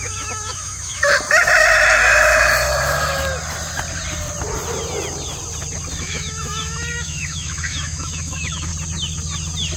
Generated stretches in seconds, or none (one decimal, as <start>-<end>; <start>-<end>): 0.0-1.0; 6.0-8.7